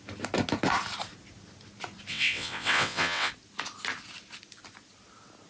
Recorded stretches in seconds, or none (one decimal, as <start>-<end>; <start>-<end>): 0.0-2.1; 3.3-5.5

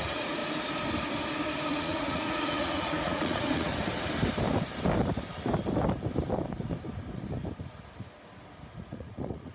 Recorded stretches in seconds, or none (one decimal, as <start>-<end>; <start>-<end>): 0.4-1.7; 3.7-8.8

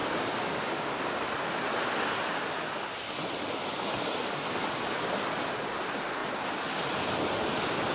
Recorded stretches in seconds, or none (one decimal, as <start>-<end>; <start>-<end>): 1.2-7.9